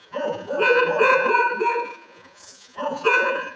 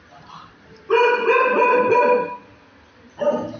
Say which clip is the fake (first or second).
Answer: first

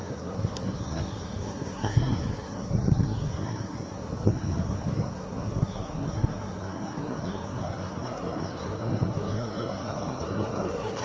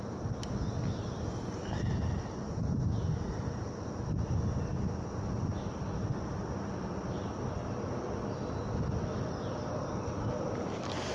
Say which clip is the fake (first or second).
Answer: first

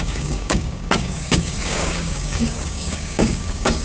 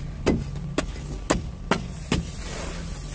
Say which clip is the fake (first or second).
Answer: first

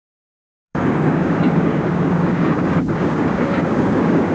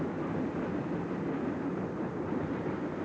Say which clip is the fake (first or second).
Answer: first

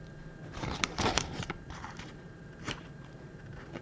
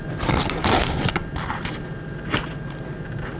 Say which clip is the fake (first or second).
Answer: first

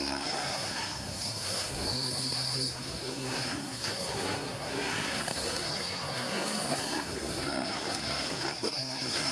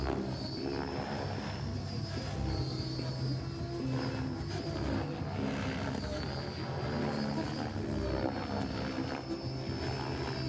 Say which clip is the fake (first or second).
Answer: first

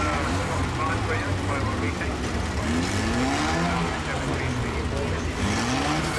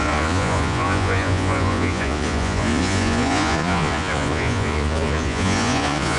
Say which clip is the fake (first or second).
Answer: second